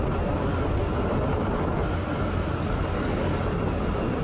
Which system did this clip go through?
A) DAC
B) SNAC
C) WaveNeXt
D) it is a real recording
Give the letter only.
D